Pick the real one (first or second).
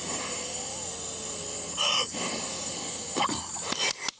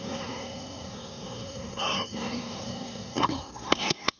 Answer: first